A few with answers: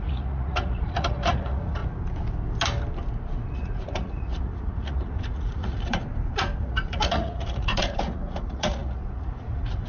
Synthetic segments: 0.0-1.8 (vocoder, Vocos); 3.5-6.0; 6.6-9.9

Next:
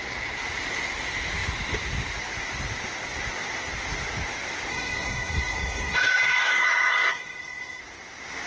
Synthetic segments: 4.7-7.8 (codec, SNAC)

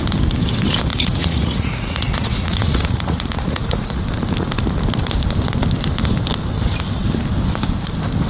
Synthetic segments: 0.9-4.0 (vocoder, Vocos)